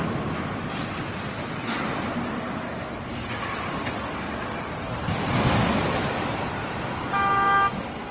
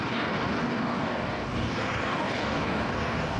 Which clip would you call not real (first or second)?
second